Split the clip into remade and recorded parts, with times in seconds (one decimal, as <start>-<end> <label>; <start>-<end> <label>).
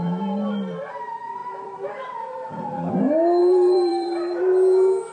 0.0-1.4 recorded; 1.4-2.9 remade; 2.9-3.4 recorded; 3.4-4.4 remade; 4.4-5.1 recorded